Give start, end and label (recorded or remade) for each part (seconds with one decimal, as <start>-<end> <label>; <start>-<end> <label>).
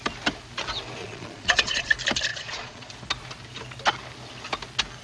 0.0-1.0 recorded; 1.0-1.9 remade; 1.9-2.3 recorded; 2.3-2.9 remade; 2.9-5.0 recorded